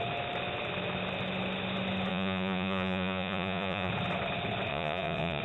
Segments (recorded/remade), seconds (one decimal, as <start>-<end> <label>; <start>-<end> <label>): 0.0-2.1 recorded; 2.1-3.9 remade; 3.9-4.7 recorded; 4.7-5.4 remade